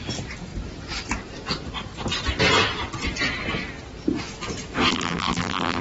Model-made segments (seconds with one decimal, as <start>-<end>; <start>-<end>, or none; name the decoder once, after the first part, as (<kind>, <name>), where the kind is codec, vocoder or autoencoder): 4.9-5.8 (vocoder, BigVGAN v2)

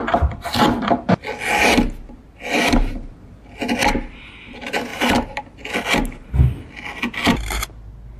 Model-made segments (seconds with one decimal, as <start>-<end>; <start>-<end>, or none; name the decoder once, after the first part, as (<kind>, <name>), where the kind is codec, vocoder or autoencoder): 0.0-0.6 (vocoder, BigVGAN v2)

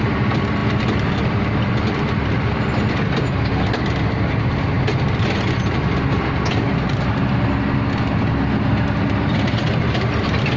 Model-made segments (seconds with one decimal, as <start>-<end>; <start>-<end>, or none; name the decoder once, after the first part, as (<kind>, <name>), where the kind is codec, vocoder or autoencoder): none

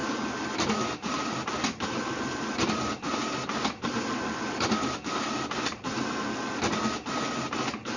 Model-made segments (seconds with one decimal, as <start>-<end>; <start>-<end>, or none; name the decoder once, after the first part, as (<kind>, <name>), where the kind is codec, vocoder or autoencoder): none